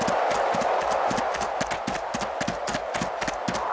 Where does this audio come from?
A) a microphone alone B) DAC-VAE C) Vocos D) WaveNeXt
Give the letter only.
A